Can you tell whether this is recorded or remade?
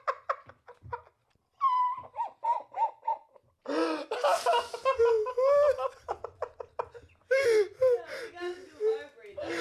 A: recorded